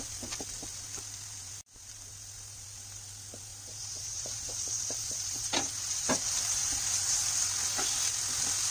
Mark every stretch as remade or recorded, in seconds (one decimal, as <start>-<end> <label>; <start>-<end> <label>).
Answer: 0.0-3.5 recorded; 3.5-7.3 remade; 7.3-8.7 recorded